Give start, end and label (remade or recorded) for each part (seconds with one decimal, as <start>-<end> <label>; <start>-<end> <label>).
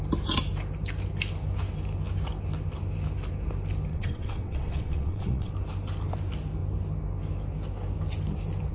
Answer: 0.0-3.9 recorded; 3.9-5.5 remade; 5.5-8.7 recorded